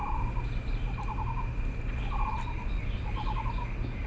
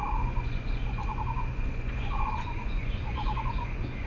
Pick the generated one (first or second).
second